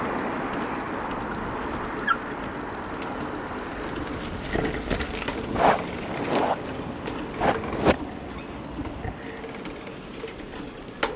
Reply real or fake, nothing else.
real